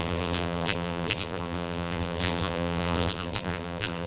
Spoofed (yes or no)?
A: yes